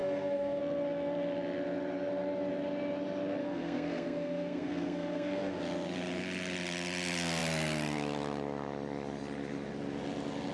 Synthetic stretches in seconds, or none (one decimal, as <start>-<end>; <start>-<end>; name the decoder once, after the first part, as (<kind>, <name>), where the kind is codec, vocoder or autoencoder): 0.0-0.6 (codec, SNAC); 3.4-5.6